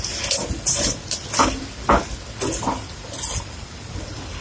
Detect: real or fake real